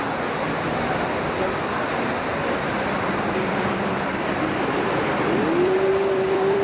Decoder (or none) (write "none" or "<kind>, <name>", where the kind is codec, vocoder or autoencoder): vocoder, BigVGAN v2